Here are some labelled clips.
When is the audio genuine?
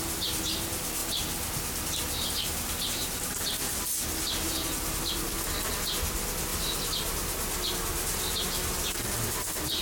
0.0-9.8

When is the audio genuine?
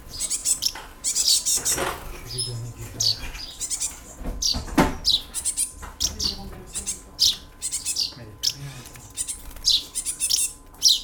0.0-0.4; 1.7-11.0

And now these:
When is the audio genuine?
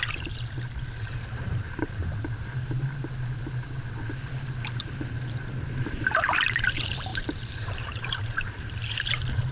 2.0-4.8